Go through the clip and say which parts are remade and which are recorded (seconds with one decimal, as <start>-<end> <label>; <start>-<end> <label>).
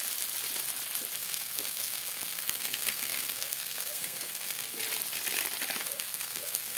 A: 0.0-1.2 recorded; 1.2-4.8 remade; 4.8-5.8 recorded; 5.8-6.8 remade